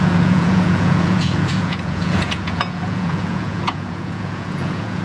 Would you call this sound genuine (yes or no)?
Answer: no